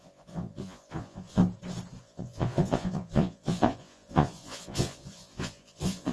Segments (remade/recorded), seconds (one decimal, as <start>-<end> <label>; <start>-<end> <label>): 0.0-1.4 remade; 1.4-2.0 recorded; 2.0-6.1 remade